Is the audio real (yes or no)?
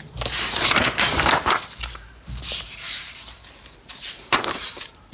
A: no